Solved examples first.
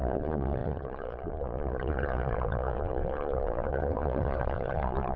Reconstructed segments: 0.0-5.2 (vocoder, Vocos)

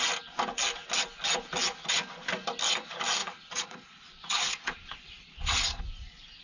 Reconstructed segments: 3.2-5.8 (vocoder, Vocos)

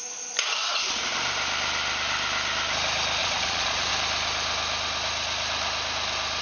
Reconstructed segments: 3.2-3.9 (vocoder, Vocos)

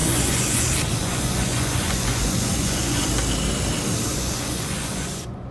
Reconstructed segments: 0.0-0.6 (vocoder, Vocos); 1.0-3.1; 4.1-5.5

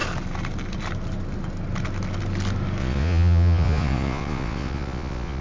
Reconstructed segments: 2.8-5.4 (vocoder, Vocos)

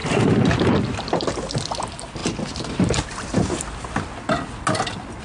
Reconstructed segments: none

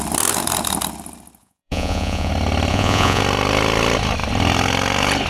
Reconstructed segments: 1.4-2.3 (vocoder, Vocos); 2.7-3.2

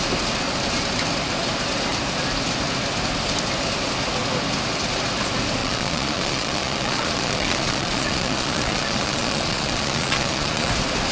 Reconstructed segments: 5.6-10.7 (vocoder, Vocos)